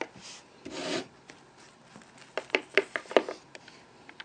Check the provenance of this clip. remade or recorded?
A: recorded